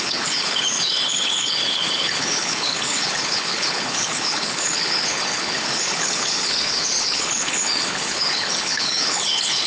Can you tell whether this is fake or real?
fake